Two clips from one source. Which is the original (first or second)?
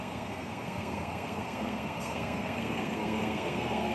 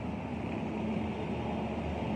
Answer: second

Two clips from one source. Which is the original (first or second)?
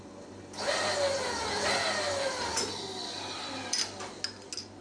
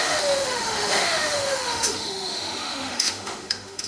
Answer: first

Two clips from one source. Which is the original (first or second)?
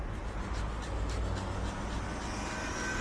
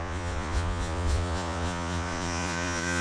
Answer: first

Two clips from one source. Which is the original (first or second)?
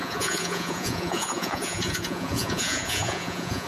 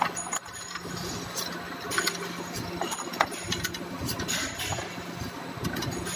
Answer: second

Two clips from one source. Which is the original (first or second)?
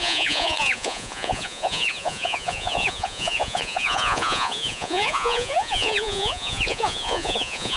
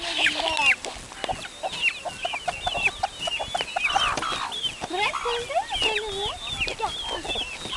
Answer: second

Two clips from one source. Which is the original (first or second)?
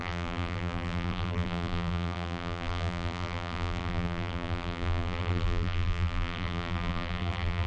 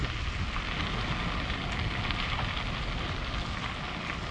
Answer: second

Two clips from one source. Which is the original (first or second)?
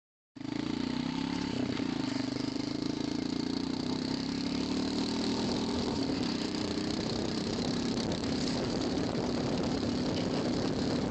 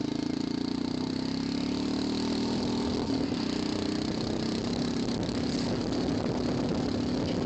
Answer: second